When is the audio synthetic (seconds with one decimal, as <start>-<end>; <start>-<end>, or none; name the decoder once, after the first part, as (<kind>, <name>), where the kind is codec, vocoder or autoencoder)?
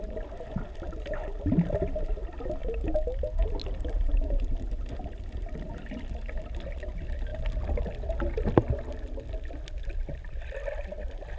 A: none